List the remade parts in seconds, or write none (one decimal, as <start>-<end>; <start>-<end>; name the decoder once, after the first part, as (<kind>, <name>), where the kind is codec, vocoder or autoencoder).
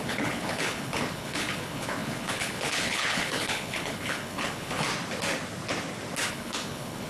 0.0-4.9 (codec, HILCodec); 6.3-7.1